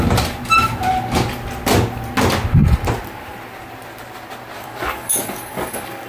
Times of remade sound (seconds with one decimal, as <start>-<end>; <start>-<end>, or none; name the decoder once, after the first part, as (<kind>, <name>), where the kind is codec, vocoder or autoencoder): 4.6-6.1 (codec, DAC)